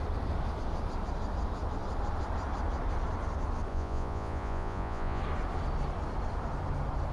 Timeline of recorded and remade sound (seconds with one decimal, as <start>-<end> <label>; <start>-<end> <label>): 0.0-3.7 recorded; 3.7-5.2 remade; 5.2-7.1 recorded